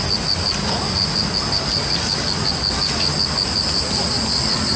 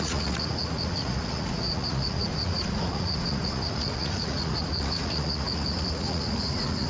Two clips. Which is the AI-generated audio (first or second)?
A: second